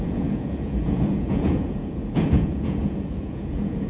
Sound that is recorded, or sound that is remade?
remade